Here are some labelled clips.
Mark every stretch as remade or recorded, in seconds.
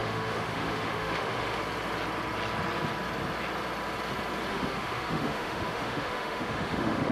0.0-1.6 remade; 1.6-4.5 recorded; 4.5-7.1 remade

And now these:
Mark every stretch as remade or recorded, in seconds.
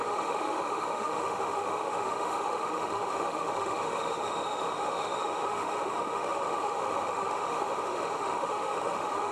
0.0-9.3 remade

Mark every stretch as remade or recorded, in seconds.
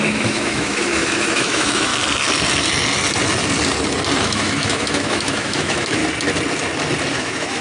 0.0-1.9 remade; 1.9-4.2 recorded; 4.2-6.0 remade; 6.0-7.1 recorded; 7.1-7.6 remade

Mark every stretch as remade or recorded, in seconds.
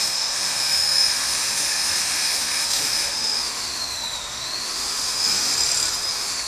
0.0-5.5 remade; 5.5-6.1 recorded; 6.1-6.5 remade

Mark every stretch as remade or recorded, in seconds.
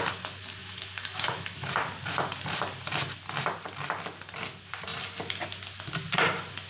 0.0-0.6 recorded; 0.6-1.7 remade; 1.7-6.7 recorded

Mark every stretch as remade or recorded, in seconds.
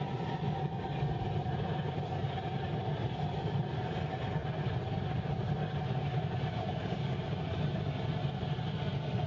0.0-9.3 recorded